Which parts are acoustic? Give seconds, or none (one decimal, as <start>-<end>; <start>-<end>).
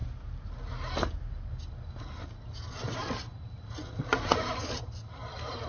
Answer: 0.0-5.7